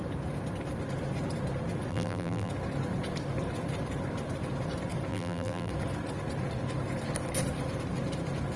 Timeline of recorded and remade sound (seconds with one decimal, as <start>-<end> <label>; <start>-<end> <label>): 0.0-1.9 recorded; 1.9-2.5 remade; 2.5-5.1 recorded; 5.1-5.7 remade; 5.7-8.6 recorded